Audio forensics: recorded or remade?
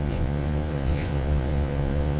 remade